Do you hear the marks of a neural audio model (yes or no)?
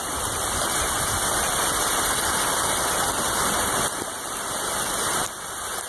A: no